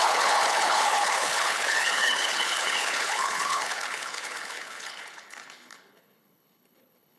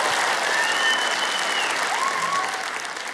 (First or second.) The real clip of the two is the second